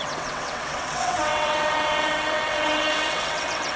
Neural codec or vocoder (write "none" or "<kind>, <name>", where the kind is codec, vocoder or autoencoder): vocoder, WaveNeXt